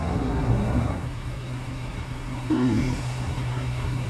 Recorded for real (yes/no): no